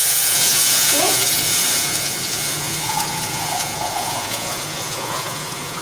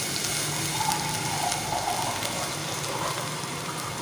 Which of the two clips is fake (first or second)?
first